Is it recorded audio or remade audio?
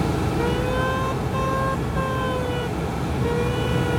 recorded